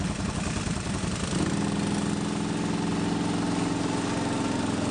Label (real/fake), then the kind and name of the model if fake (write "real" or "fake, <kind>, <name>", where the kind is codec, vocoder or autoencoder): real